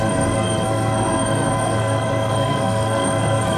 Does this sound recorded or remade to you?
remade